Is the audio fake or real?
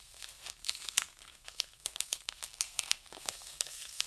fake